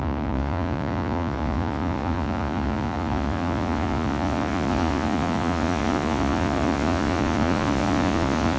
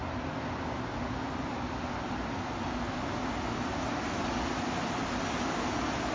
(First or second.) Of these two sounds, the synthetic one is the first